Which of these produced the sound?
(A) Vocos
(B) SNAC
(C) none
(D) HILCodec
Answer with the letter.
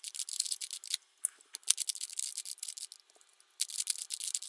C